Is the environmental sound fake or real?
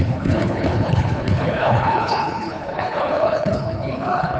fake